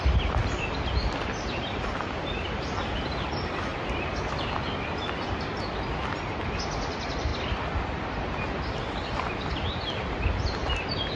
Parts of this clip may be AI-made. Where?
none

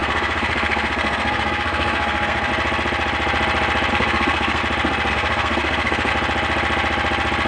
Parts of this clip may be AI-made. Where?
0.0-2.5 (codec, SNAC); 3.9-4.6; 5.1-6.1